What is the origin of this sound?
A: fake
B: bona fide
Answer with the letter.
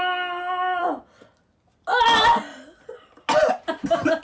B